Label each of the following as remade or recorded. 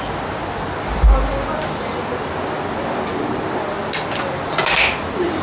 recorded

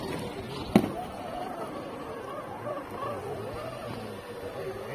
recorded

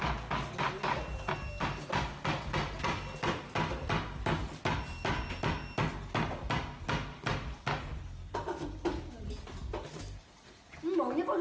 recorded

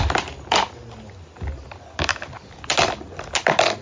recorded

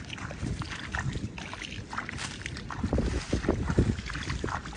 recorded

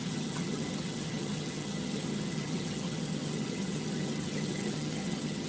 remade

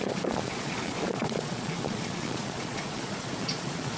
remade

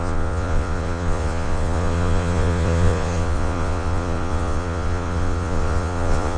remade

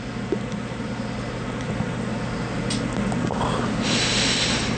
recorded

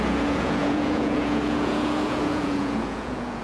remade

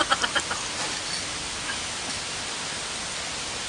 recorded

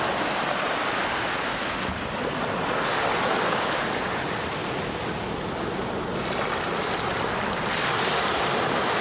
recorded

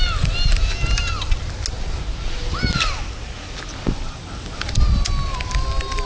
recorded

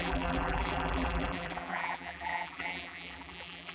remade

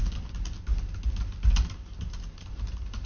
recorded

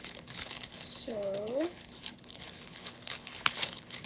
remade